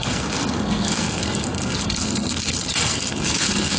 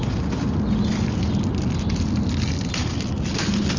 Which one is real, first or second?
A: second